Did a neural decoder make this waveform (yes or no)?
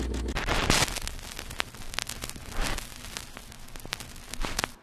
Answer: no